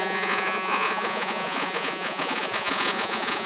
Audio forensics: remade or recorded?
remade